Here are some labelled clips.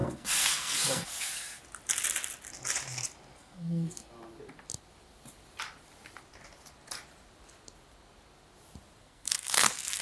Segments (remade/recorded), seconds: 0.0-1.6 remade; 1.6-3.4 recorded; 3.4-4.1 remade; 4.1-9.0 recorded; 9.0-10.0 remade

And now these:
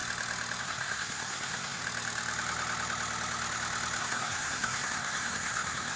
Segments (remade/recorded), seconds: 0.0-0.6 recorded; 0.6-1.8 remade; 1.8-4.0 recorded; 4.0-6.0 remade

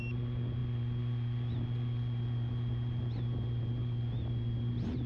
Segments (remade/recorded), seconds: 0.0-5.1 recorded

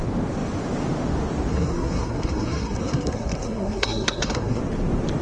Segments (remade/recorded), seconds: 0.0-1.5 recorded; 1.5-4.6 remade; 4.6-5.2 recorded

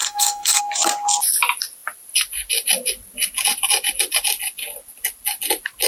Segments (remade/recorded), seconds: 0.0-0.6 remade; 0.6-5.9 recorded

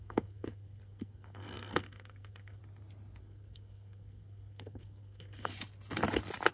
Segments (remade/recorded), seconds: 0.0-2.6 remade; 2.6-3.2 recorded; 3.2-5.5 remade; 5.5-6.5 recorded